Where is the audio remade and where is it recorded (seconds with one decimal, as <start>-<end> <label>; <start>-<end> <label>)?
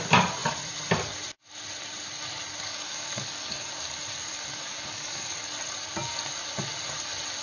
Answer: 0.0-2.7 recorded; 2.7-3.7 remade; 3.7-4.3 recorded; 4.3-5.4 remade; 5.4-7.4 recorded